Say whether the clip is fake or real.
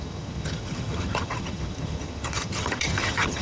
fake